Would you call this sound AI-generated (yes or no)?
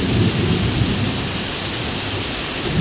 no